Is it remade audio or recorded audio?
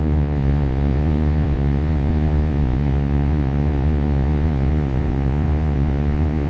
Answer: remade